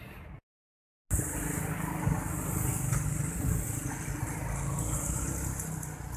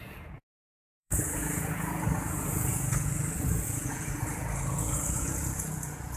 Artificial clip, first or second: second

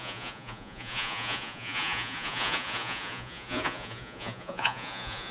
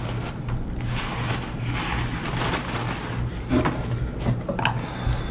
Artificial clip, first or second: first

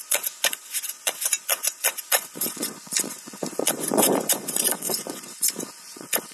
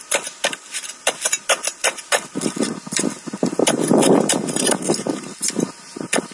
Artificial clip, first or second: first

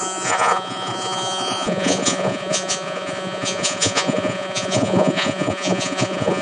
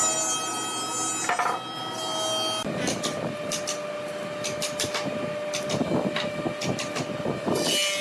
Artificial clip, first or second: first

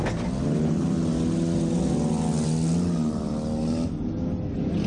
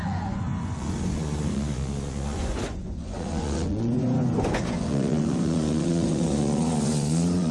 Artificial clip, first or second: second